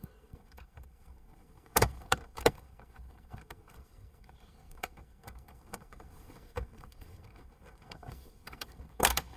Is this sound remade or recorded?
remade